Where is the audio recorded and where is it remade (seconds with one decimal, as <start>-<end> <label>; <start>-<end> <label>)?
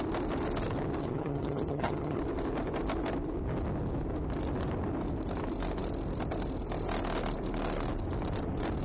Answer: 0.0-1.0 recorded; 1.0-2.2 remade; 2.2-8.8 recorded